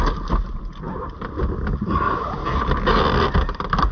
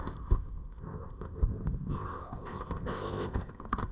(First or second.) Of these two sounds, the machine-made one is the second